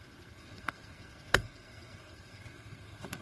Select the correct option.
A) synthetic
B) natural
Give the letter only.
A